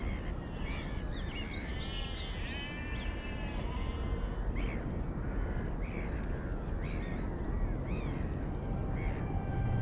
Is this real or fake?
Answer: real